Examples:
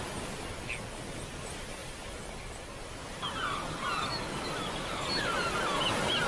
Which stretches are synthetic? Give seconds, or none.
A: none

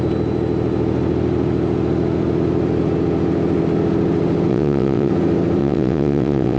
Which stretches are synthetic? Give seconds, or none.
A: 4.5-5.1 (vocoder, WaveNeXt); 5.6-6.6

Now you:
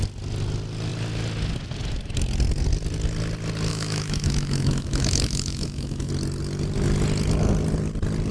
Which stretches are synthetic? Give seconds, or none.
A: 3.7-6.1 (autoencoder, DAC-VAE)